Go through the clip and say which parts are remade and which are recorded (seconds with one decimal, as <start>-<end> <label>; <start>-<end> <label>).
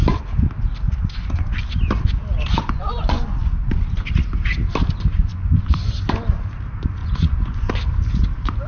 0.0-2.5 recorded; 2.5-3.7 remade; 3.7-5.3 recorded; 5.3-5.9 remade; 5.9-7.0 recorded; 7.0-7.7 remade; 7.7-8.7 recorded